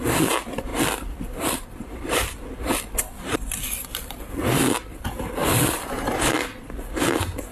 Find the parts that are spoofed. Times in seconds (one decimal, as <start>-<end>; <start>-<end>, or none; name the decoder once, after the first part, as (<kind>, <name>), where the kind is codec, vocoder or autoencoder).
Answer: 0.7-4.1 (vocoder, BigVGAN v2); 5.4-7.0